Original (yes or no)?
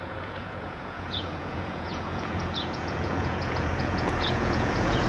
no